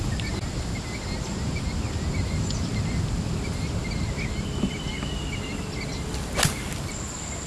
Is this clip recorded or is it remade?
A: recorded